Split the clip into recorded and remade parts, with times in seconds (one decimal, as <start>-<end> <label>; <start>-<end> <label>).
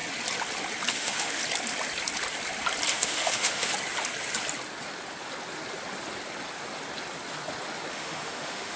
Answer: 0.0-0.9 recorded; 0.9-1.4 remade; 1.4-2.9 recorded; 2.9-3.7 remade; 3.7-7.9 recorded; 7.9-8.8 remade